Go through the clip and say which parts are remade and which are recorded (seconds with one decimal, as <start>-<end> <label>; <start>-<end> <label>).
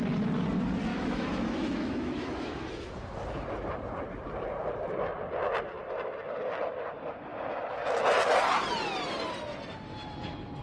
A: 0.0-0.9 recorded; 0.9-2.9 remade; 2.9-10.6 recorded